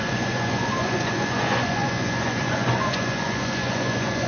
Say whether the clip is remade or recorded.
remade